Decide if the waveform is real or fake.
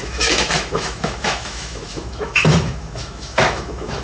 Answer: fake